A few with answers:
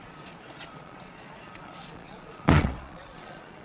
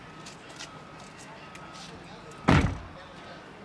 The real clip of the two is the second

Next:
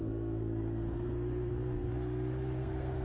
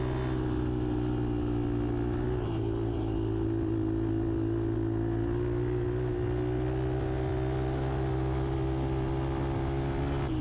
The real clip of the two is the second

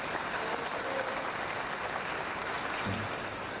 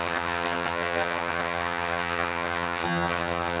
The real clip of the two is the first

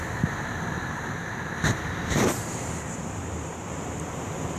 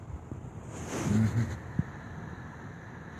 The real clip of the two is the second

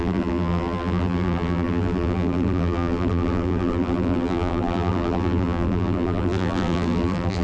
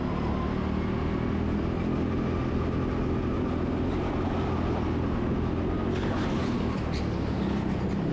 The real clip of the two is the second